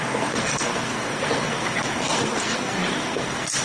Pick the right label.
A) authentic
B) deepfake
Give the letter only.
B